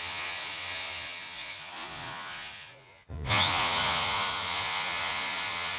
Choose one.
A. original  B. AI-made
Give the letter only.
B